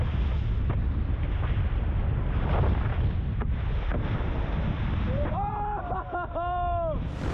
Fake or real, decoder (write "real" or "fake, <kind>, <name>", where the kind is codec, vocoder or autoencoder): real